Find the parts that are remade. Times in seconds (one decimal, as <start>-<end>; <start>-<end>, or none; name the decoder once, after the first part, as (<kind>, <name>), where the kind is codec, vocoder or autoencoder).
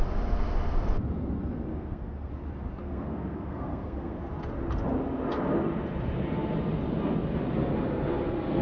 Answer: 1.7-2.3 (codec, SNAC); 2.8-4.2